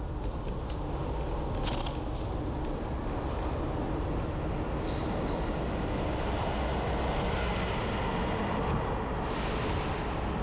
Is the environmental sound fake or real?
real